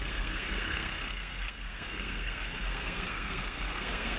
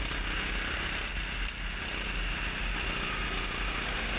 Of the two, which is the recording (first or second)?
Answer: second